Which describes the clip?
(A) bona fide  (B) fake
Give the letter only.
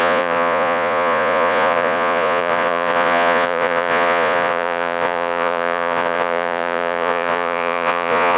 B